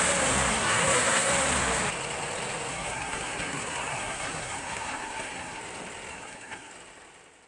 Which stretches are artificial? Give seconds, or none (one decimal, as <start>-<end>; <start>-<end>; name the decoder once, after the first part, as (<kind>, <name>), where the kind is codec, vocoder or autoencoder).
0.5-1.3 (codec, SNAC); 2.7-5.6; 6.1-6.7